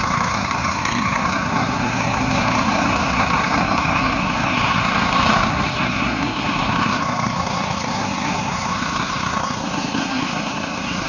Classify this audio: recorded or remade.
remade